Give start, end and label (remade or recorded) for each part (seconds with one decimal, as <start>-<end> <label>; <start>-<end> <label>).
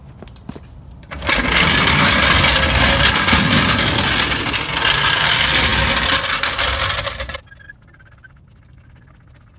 0.0-9.6 recorded